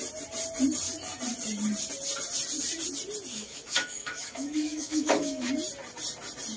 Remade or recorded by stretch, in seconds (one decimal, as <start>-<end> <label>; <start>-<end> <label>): 0.0-3.3 recorded; 3.3-5.5 remade; 5.5-6.6 recorded